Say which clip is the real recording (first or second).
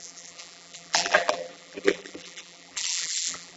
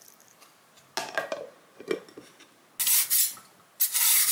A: second